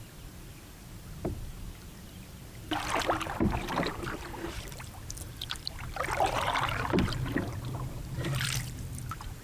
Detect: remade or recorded remade